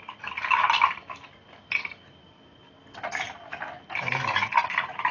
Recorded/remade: recorded